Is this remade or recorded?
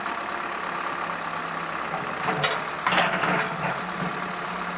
recorded